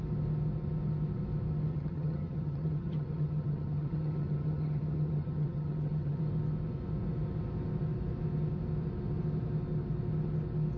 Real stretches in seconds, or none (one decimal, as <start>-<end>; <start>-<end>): 0.0-1.7; 6.2-10.8